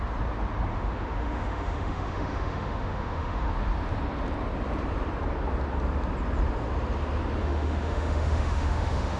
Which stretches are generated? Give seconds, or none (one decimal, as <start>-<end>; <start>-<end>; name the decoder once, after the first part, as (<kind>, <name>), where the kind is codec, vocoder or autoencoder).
0.7-3.5 (autoencoder, DAC-VAE); 7.4-9.2